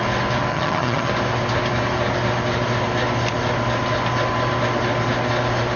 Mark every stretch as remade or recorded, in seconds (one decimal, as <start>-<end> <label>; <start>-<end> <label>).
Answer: 0.0-0.5 recorded; 0.5-1.1 remade; 1.1-5.8 recorded

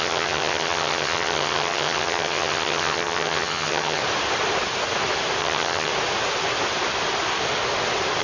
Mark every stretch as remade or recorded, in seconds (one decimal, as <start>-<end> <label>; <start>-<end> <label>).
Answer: 0.0-4.0 remade; 4.0-5.4 recorded; 5.4-5.9 remade; 5.9-8.2 recorded